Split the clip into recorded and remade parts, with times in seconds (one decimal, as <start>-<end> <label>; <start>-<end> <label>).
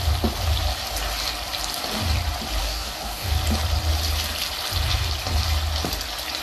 0.0-2.6 recorded; 2.6-3.3 remade; 3.3-6.4 recorded